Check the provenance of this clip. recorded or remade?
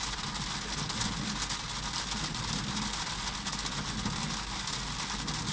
recorded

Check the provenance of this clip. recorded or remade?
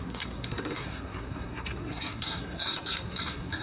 remade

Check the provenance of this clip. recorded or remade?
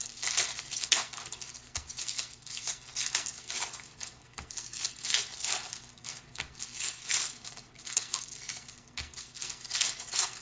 remade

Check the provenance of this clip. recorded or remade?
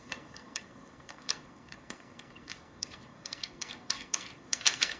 remade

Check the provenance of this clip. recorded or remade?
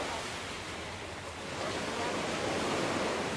recorded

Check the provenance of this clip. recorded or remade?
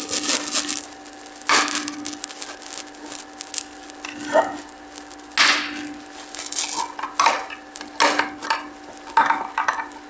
recorded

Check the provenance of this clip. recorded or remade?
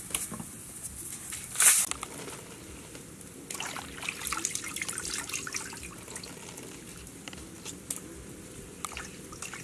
recorded